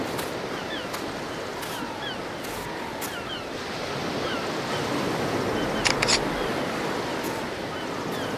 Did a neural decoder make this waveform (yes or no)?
no